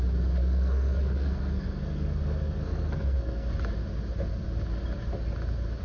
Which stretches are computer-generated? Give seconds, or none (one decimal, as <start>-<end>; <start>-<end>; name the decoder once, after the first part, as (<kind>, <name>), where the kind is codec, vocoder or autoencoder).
0.4-3.5 (codec, SNAC)